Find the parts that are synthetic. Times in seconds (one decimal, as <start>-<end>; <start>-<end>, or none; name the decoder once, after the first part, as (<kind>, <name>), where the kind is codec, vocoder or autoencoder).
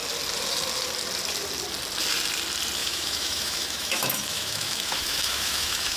2.8-6.0 (autoencoder, DAC-VAE)